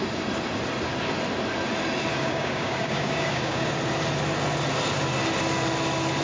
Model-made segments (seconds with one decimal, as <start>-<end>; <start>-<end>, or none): 2.1-3.7